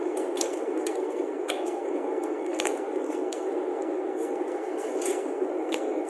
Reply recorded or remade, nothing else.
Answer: remade